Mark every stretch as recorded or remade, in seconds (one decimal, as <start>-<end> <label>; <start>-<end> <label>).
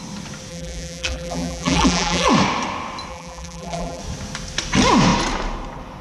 0.0-0.5 recorded; 0.5-2.3 remade; 2.3-3.1 recorded; 3.1-4.0 remade; 4.0-6.0 recorded